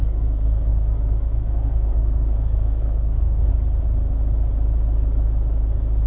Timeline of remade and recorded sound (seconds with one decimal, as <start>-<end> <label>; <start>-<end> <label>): 0.0-3.5 remade; 3.5-6.1 recorded